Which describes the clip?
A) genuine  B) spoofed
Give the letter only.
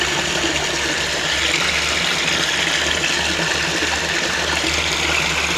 A